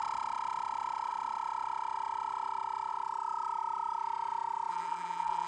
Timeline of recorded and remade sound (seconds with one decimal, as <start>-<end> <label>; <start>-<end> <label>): 0.0-4.7 recorded; 4.7-5.5 remade